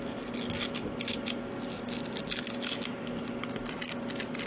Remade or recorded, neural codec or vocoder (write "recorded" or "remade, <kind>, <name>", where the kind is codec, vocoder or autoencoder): recorded